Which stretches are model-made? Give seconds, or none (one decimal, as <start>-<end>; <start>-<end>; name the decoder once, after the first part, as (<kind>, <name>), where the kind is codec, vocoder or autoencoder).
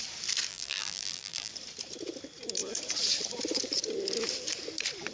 0.5-1.5 (vocoder, BigVGAN v2)